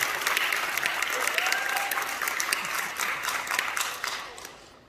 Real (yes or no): yes